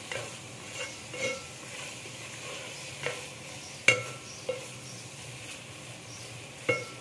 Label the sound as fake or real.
real